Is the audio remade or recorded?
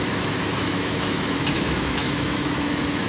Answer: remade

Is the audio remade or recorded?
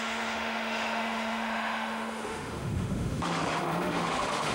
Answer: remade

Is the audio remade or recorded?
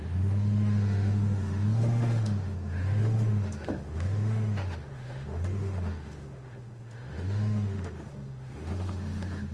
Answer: remade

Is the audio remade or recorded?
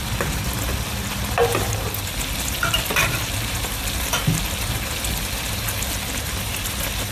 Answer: recorded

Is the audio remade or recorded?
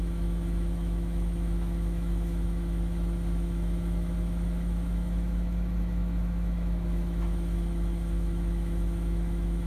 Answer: remade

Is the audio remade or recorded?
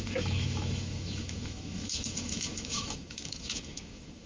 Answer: remade